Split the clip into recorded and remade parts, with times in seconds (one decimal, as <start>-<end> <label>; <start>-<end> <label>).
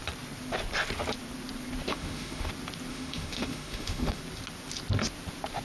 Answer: 0.0-1.9 recorded; 1.9-2.5 remade; 2.5-2.9 recorded; 2.9-4.2 remade; 4.2-5.6 recorded